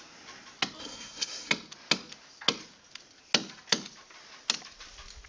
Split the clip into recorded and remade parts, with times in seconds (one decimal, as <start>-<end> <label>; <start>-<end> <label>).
0.0-0.8 recorded; 0.8-1.5 remade; 1.5-5.3 recorded

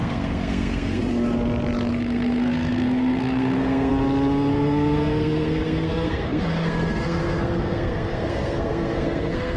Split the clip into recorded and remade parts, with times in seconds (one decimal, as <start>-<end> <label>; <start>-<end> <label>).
0.0-1.0 remade; 1.0-1.9 recorded; 1.9-3.9 remade; 3.9-4.5 recorded; 4.5-9.6 remade